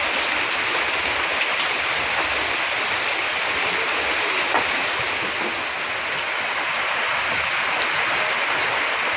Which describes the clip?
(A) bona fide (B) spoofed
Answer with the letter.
A